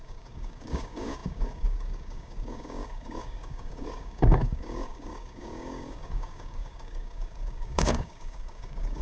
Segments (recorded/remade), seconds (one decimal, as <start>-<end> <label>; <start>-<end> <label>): 0.0-9.0 remade